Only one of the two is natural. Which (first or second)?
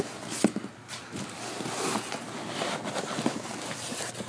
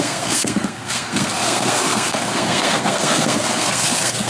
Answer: first